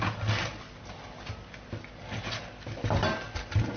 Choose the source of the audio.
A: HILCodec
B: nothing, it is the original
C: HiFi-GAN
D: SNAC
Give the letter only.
B